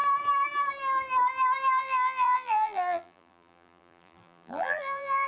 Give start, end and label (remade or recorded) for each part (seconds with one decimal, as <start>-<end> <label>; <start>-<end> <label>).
0.0-1.8 recorded; 1.8-5.3 remade